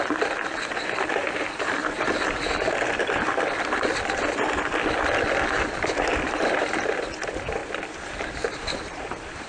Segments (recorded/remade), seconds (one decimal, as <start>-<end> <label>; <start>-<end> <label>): 0.0-1.8 remade; 1.8-5.6 recorded; 5.6-9.5 remade